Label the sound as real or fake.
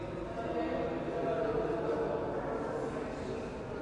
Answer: real